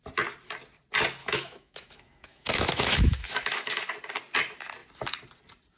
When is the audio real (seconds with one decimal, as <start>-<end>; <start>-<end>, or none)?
0.0-1.2; 3.9-5.8